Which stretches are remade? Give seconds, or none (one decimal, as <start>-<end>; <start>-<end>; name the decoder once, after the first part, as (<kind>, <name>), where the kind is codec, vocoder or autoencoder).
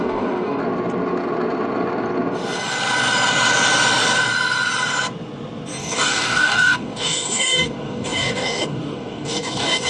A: 0.0-0.6 (codec, DAC); 5.8-9.9